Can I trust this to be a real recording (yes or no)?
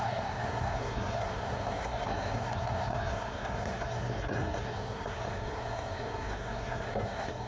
no